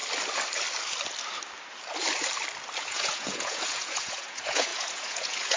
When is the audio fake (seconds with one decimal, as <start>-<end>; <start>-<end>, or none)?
2.8-5.6